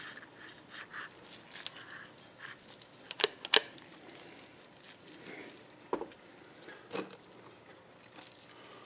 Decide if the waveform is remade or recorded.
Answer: recorded